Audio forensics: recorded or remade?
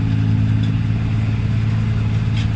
recorded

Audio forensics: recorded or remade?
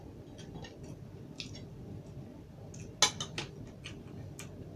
recorded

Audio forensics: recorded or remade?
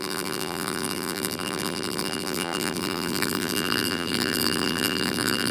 remade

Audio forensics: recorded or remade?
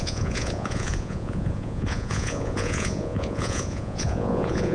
remade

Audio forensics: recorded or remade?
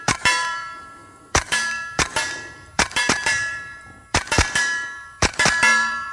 remade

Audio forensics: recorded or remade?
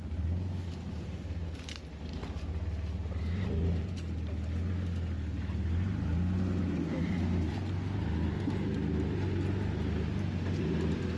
recorded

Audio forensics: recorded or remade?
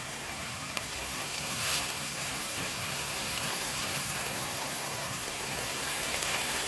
remade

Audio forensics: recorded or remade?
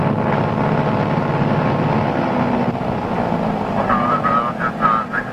recorded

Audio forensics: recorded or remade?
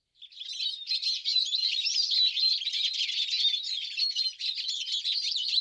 remade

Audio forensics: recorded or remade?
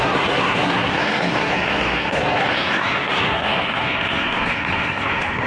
remade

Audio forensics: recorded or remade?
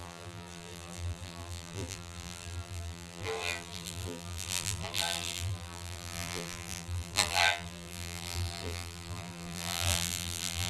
remade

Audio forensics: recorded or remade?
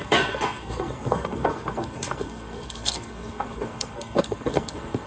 remade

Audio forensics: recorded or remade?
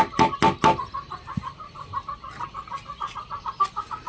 recorded